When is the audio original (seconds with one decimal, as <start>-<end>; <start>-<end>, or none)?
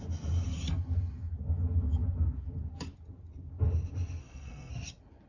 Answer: 0.0-4.2; 4.7-5.3